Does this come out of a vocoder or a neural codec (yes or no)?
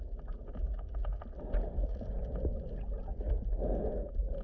no